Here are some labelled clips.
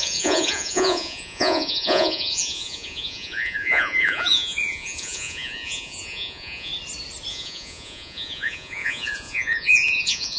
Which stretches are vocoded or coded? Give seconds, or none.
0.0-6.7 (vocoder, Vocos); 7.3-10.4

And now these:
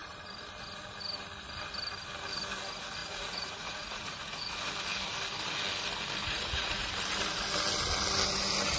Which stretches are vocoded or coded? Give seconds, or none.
3.0-4.5 (vocoder, Vocos); 6.2-6.9